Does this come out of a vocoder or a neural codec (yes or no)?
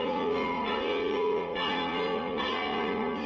yes